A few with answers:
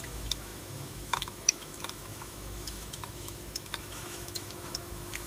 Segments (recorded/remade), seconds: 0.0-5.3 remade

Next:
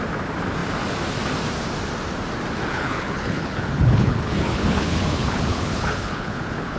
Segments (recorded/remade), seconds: 0.0-2.7 recorded; 2.7-6.8 remade

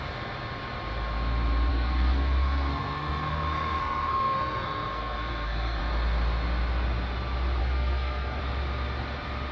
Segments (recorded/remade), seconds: 0.0-1.7 recorded; 1.7-5.8 remade; 5.8-7.6 recorded; 7.6-8.4 remade; 8.4-9.5 recorded